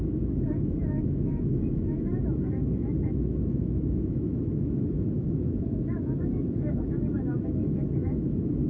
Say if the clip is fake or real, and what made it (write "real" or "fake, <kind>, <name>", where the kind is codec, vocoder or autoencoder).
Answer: fake, autoencoder, DAC-VAE